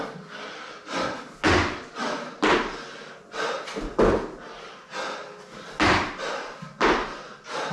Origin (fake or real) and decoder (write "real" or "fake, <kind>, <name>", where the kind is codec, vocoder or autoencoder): real